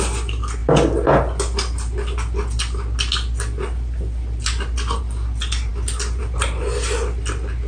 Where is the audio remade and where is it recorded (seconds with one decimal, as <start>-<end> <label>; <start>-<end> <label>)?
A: 0.0-7.7 recorded